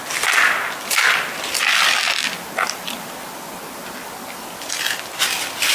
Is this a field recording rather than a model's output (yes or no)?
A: yes